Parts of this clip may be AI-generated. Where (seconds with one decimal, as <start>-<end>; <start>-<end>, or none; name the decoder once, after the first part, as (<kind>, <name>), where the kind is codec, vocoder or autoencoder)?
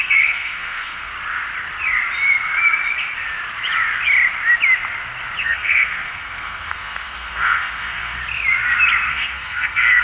0.0-1.1 (codec, SNAC); 5.4-8.2; 9.1-10.0